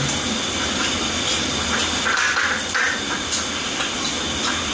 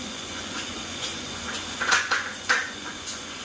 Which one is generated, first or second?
second